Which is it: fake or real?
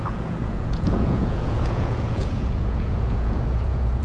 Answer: fake